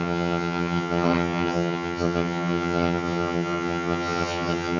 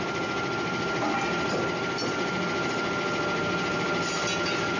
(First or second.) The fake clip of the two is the first